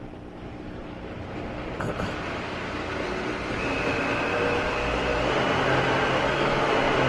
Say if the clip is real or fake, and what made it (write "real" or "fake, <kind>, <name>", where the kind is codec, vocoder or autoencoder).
real